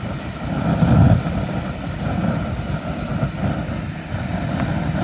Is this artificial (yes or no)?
no